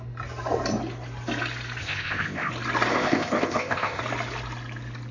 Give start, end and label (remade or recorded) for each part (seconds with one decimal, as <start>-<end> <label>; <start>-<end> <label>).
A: 0.0-1.8 recorded; 1.8-2.5 remade; 2.5-2.9 recorded; 2.9-4.0 remade; 4.0-5.1 recorded